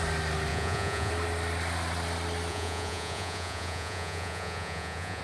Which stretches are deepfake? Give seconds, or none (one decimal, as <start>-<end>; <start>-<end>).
0.5-1.1; 2.5-5.2